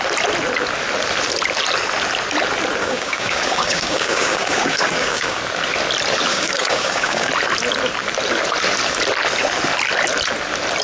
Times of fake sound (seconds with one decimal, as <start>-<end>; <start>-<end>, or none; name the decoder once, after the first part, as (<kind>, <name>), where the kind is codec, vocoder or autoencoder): 2.8-5.4 (codec, DAC); 6.3-7.3